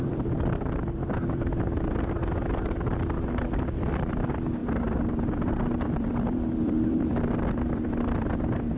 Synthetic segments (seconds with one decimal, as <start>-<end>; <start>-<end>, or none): 0.0-8.8